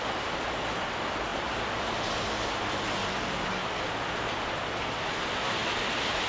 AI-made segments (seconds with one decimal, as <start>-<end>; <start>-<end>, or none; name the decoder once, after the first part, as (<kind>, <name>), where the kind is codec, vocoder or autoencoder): 1.3-1.8 (vocoder, BigVGAN v2)